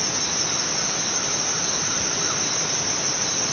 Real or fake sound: real